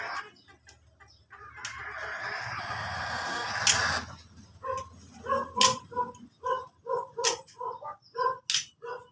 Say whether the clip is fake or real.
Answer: real